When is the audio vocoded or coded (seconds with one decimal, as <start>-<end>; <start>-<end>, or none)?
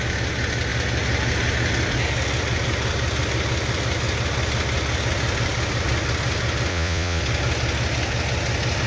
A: 6.7-7.2